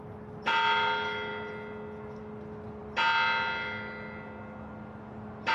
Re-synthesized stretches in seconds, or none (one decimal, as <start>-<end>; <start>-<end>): none